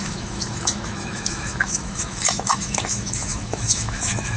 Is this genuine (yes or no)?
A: no